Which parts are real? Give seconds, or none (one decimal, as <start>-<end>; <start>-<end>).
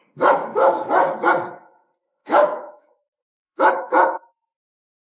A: 0.0-2.2; 3.7-5.1